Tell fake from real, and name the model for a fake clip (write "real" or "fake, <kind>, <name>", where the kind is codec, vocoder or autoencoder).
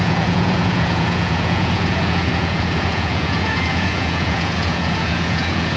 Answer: fake, vocoder, Vocos